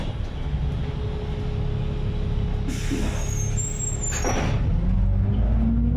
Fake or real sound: real